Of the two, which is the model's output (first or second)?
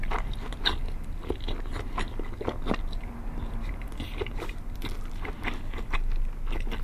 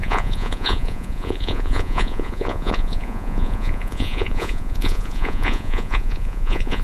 second